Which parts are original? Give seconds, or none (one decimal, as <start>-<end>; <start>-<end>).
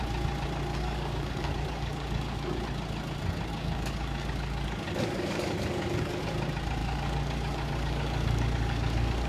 0.0-0.7; 2.6-3.5; 6.2-6.8